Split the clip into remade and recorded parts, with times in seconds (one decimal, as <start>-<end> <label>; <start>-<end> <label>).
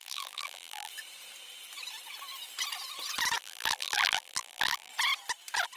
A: 0.0-0.9 remade; 0.9-3.4 recorded; 3.4-4.9 remade; 4.9-5.8 recorded